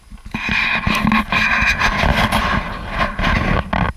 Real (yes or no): yes